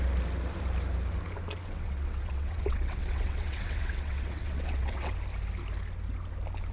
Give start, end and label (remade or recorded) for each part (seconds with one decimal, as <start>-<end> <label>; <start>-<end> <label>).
0.0-1.6 recorded; 1.6-5.1 remade; 5.1-6.7 recorded